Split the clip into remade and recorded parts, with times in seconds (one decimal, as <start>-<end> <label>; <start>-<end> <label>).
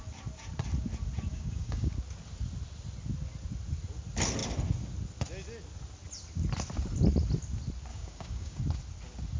0.0-1.3 recorded; 1.3-1.9 remade; 1.9-7.9 recorded; 7.9-8.6 remade; 8.6-9.4 recorded